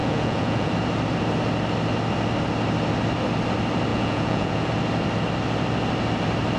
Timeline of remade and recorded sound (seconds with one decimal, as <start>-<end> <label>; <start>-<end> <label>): 0.0-0.7 remade; 0.7-3.9 recorded; 3.9-4.7 remade; 4.7-6.6 recorded